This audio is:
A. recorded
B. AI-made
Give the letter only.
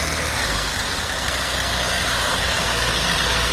B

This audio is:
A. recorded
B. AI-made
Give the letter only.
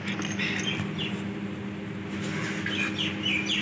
A